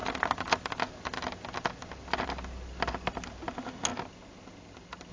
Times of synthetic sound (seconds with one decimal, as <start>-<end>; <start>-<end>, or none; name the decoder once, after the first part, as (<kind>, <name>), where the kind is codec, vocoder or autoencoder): none